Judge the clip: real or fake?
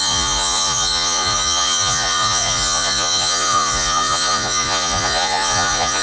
fake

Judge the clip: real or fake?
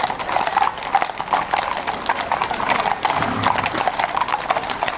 real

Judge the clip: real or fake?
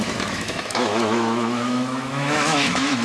fake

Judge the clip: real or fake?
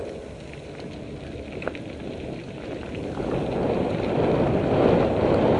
real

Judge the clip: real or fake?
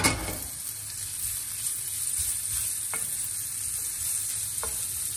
real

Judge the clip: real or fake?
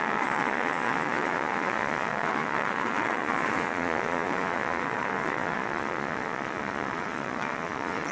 fake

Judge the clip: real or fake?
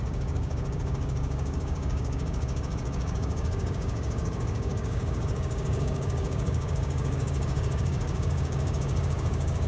fake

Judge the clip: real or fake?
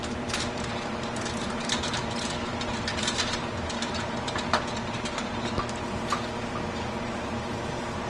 fake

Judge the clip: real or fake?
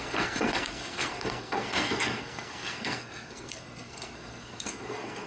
fake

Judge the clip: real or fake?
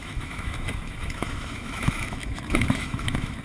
fake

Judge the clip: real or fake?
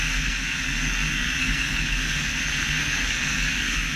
fake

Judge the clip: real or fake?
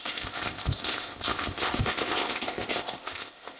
fake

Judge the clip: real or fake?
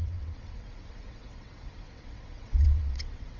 fake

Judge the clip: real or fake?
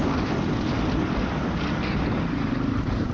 real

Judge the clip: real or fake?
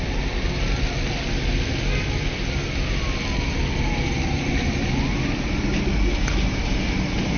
real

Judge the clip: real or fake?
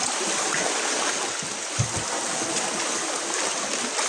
real